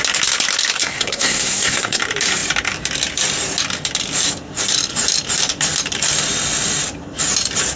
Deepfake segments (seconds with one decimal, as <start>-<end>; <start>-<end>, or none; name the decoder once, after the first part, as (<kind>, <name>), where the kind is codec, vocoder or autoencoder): 0.8-2.0 (codec, SNAC)